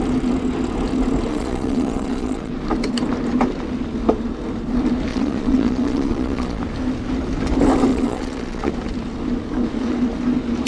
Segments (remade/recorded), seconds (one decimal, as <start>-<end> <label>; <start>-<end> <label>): 0.0-1.3 recorded; 1.3-2.5 remade; 2.5-5.1 recorded; 5.1-6.6 remade; 6.6-7.9 recorded; 7.9-8.7 remade; 8.7-10.7 recorded